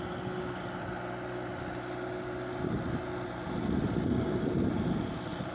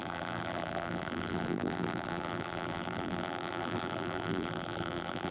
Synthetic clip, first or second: second